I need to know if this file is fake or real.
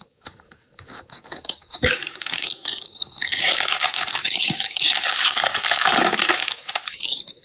fake